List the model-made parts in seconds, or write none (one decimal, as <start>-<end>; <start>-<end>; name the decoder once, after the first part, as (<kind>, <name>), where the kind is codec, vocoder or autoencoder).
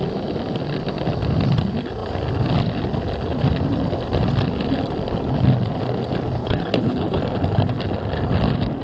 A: 6.4-7.2 (codec, HILCodec)